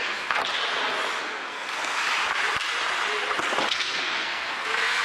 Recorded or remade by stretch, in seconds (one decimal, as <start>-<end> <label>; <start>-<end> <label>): 0.0-0.4 remade; 0.4-1.2 recorded; 1.2-2.0 remade; 2.0-3.7 recorded; 3.7-5.0 remade